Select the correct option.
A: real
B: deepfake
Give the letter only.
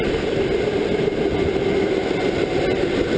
A